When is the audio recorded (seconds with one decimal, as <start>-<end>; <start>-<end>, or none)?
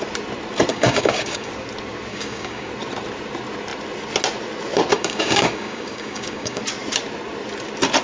0.0-0.7; 1.5-2.1; 2.7-4.9; 6.6-8.0